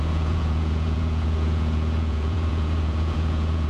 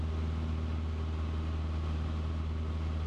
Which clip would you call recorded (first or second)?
second